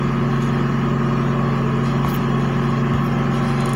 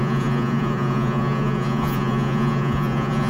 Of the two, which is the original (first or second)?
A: first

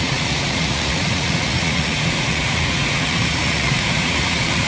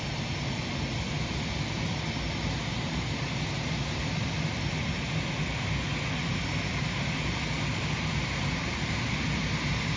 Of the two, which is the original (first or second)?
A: second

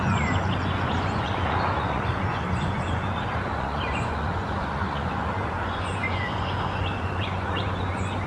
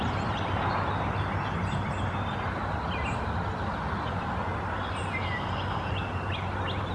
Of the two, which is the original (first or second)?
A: second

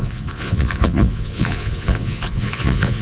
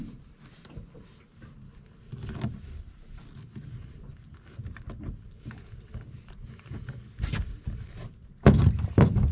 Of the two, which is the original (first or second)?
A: second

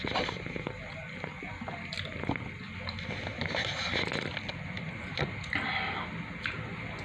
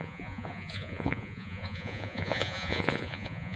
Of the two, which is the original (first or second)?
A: first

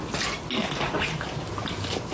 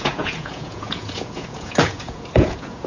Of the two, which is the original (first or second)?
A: first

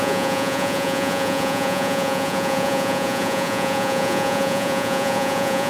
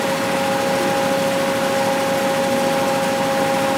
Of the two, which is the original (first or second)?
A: second